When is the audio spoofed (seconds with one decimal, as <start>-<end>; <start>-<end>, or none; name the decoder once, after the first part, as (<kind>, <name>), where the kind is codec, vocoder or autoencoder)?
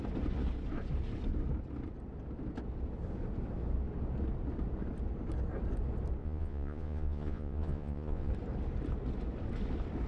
6.2-8.3 (vocoder, Vocos)